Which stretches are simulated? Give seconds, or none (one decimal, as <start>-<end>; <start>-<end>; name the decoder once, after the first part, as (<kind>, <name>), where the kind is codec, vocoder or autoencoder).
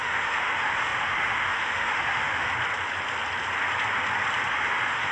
0.0-2.5 (autoencoder, DAC-VAE); 4.5-5.1